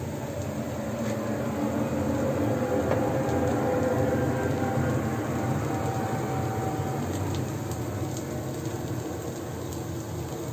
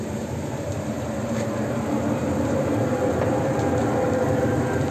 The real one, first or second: first